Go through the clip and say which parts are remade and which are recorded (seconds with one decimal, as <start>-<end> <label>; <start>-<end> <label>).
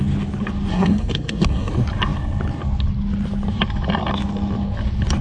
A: 0.0-0.7 recorded; 0.7-1.7 remade; 1.7-5.2 recorded